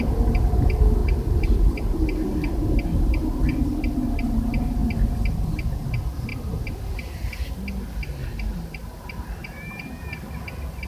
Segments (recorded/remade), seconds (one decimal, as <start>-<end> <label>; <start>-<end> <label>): 0.0-1.0 recorded; 1.0-2.0 remade; 2.0-8.2 recorded; 8.2-10.0 remade; 10.0-10.9 recorded